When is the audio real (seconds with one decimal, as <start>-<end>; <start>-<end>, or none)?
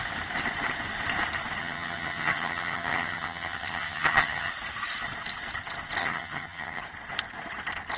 0.0-1.6; 4.5-6.0; 6.8-8.0